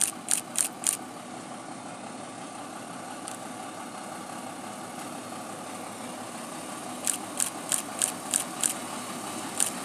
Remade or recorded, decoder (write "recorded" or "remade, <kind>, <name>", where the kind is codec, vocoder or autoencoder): recorded